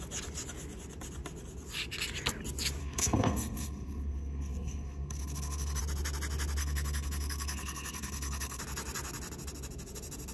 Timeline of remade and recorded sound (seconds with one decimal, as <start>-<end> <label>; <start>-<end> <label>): 0.0-2.8 recorded; 2.8-5.8 remade; 5.8-6.6 recorded; 6.6-8.6 remade; 8.6-10.3 recorded